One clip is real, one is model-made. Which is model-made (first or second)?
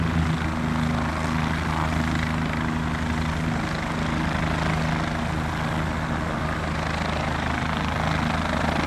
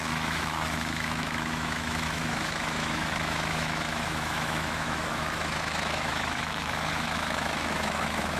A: second